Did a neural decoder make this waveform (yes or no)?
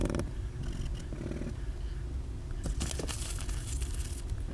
no